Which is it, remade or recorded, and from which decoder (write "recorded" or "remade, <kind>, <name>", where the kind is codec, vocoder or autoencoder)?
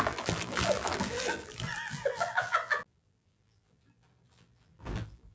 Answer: remade, vocoder, BigVGAN v2